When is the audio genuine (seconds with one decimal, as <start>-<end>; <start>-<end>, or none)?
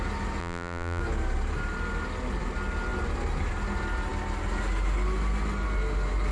0.0-0.4; 1.0-6.3